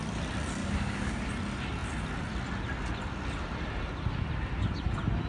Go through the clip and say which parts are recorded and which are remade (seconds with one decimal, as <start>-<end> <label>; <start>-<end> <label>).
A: 0.0-0.6 recorded; 0.6-1.3 remade; 1.3-5.3 recorded